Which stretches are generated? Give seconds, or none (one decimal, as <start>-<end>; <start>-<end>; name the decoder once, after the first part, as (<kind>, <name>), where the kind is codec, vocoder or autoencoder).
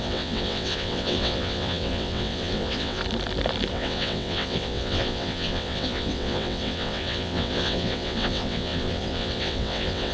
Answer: 0.0-3.0 (vocoder, WaveNeXt); 3.7-10.1